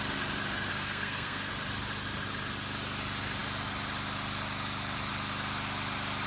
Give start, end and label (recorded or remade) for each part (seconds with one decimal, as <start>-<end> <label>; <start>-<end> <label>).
0.0-0.7 recorded; 0.7-1.5 remade; 1.5-6.3 recorded

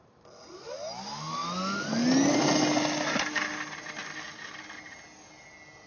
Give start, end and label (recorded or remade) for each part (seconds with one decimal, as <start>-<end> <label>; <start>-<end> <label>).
0.0-5.9 recorded